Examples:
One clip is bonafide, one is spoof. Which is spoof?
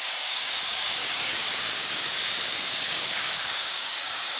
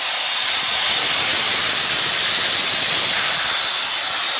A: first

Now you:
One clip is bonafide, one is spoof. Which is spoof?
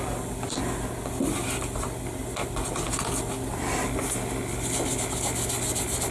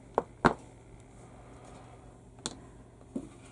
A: first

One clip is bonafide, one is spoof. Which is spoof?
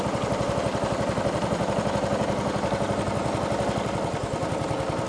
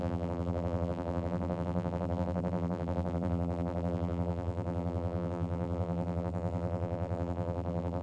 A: second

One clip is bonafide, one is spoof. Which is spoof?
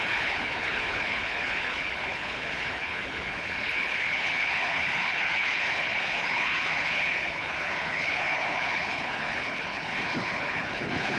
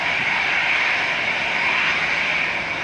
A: first